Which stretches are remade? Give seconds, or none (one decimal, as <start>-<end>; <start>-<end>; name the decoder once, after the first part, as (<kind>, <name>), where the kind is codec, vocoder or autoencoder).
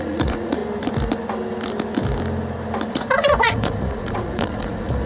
0.0-0.6 (vocoder, Vocos); 2.9-5.1